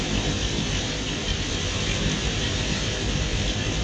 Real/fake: real